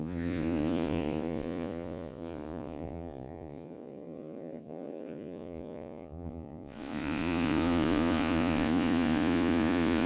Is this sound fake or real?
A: fake